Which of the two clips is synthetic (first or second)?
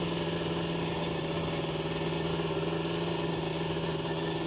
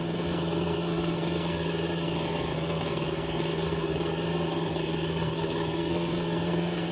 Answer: second